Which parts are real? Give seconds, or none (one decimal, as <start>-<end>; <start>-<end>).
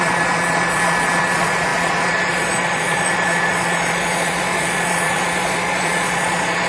none